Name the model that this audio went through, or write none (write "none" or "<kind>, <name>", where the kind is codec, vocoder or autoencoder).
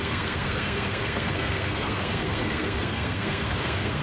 codec, SNAC